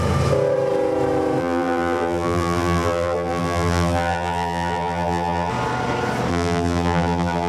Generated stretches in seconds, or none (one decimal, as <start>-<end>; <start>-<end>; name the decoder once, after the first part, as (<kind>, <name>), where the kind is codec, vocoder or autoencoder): 1.4-5.5 (vocoder, BigVGAN v2); 6.3-7.5